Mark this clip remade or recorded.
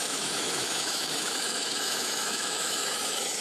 remade